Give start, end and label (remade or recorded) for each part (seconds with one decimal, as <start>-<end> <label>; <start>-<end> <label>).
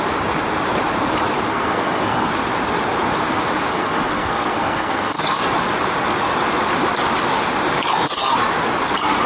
0.0-1.5 recorded; 1.5-2.3 remade; 2.3-3.7 recorded; 3.7-5.2 remade; 5.2-9.3 recorded